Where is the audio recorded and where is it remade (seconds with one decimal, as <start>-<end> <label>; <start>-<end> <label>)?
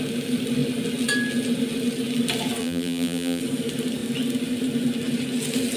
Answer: 0.0-2.6 recorded; 2.6-3.4 remade; 3.4-5.8 recorded